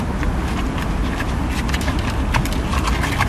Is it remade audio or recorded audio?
recorded